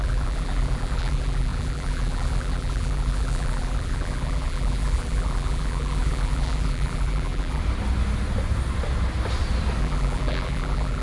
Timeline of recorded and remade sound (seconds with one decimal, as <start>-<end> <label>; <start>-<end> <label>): 0.0-7.6 remade; 7.6-9.8 recorded; 9.8-11.0 remade